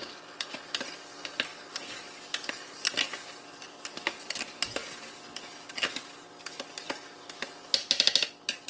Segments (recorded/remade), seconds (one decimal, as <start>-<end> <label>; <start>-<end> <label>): 0.0-8.7 recorded